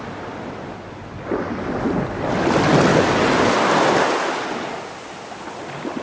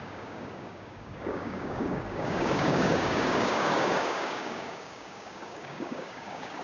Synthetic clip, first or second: second